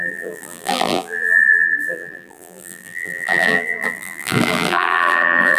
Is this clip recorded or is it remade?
remade